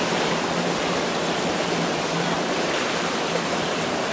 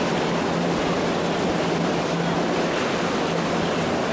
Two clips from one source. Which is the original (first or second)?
second